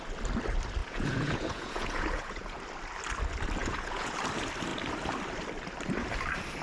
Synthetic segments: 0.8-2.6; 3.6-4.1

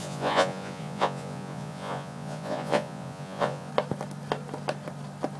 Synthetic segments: 0.0-3.7